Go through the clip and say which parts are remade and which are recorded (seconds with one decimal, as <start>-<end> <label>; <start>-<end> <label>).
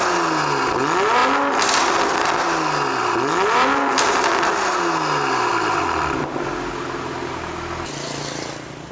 0.0-8.9 recorded